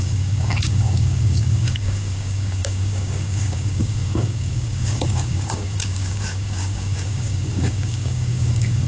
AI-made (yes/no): yes